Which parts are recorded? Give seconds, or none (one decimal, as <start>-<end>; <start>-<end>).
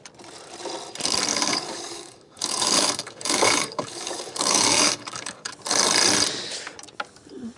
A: 0.0-1.3; 5.5-7.6